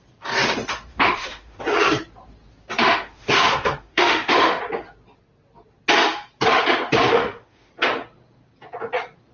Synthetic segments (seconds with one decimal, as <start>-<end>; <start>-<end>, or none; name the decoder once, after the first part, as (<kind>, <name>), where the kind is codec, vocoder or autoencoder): 0.9-1.6 (autoencoder, DAC-VAE); 2.8-4.6; 7.2-7.7